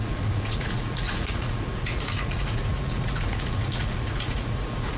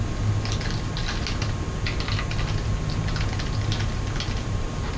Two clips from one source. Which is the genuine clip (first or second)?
second